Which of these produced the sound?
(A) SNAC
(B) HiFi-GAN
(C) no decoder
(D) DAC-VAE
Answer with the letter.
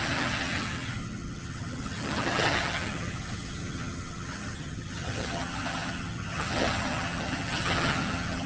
B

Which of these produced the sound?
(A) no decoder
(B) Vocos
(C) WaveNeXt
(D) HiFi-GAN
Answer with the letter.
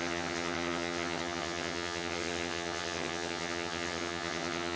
D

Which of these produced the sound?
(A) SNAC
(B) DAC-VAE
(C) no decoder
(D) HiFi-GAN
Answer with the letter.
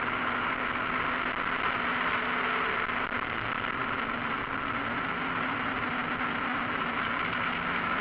C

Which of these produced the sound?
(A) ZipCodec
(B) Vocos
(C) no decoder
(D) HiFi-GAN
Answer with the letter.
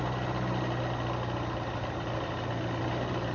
C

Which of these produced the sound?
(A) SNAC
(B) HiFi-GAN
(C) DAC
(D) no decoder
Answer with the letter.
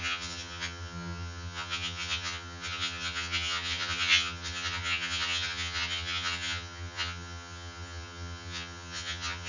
B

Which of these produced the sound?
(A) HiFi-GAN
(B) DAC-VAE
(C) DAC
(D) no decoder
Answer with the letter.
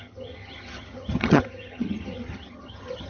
A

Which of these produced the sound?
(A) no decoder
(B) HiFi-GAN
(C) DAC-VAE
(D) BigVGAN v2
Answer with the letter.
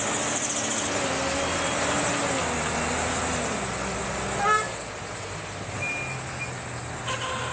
A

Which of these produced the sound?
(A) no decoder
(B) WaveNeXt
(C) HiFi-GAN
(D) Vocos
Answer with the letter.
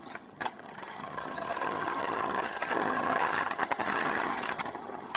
C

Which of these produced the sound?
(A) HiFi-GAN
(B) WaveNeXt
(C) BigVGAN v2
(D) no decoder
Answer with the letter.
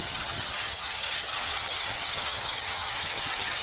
A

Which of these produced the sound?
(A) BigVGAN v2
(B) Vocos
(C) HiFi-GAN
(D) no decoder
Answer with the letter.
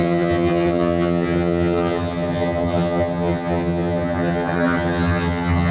C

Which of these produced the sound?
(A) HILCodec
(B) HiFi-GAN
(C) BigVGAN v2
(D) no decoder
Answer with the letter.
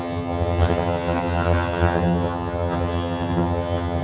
B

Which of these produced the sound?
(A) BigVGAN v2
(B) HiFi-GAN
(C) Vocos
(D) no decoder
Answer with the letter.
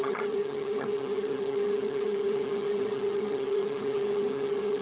B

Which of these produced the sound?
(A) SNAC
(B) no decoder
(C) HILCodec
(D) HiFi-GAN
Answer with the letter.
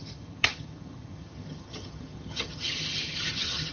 D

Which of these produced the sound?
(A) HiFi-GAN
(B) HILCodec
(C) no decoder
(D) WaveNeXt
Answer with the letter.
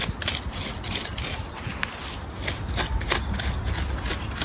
C